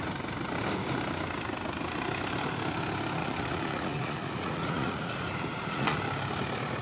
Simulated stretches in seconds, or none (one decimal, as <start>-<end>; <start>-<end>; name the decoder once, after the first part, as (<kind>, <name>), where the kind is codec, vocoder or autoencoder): 3.2-6.0 (vocoder, Vocos)